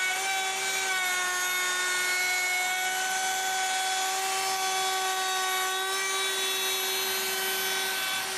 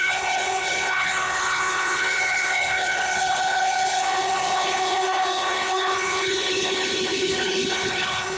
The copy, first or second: second